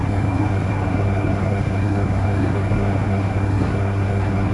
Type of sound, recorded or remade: remade